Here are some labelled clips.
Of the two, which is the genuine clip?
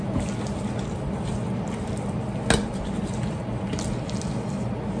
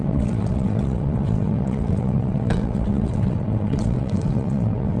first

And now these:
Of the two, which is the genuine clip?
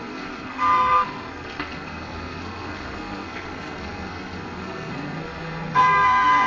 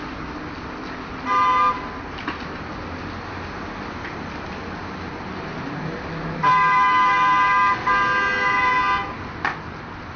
second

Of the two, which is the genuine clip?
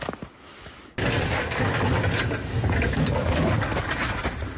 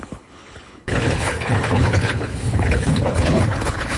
first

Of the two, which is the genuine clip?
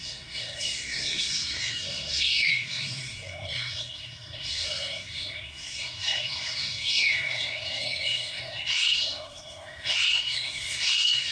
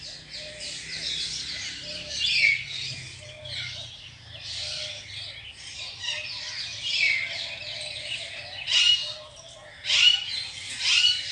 second